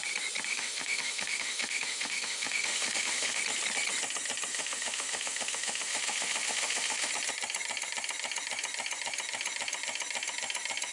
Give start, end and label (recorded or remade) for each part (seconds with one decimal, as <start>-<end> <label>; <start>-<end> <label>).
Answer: 0.0-0.5 recorded; 0.5-3.4 remade; 3.4-4.5 recorded; 4.5-7.1 remade; 7.1-10.9 recorded